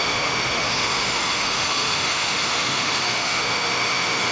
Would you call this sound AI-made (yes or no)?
yes